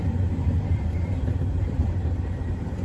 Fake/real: fake